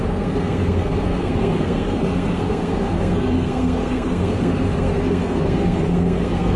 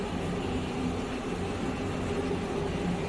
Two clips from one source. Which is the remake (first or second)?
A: first